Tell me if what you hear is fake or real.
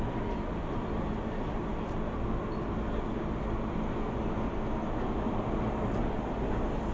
real